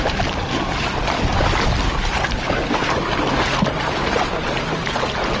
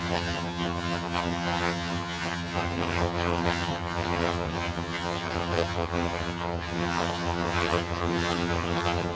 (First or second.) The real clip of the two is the first